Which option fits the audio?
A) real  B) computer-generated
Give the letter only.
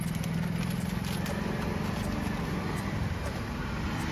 A